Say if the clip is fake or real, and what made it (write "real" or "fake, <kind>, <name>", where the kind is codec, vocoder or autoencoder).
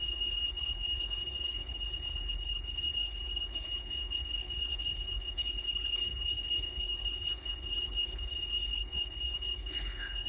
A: fake, codec, HILCodec